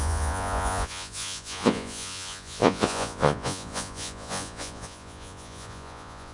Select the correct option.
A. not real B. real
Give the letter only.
A